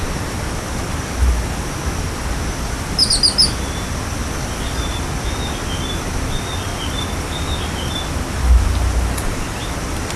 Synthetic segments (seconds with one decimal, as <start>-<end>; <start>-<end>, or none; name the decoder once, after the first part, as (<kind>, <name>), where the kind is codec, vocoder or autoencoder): none